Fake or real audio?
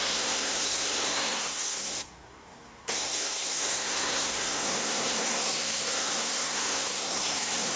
fake